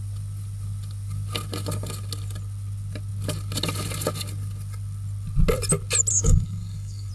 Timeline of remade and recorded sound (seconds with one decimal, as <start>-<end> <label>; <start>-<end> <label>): 0.0-6.1 recorded; 6.1-7.1 remade